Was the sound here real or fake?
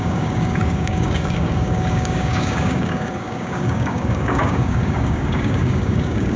fake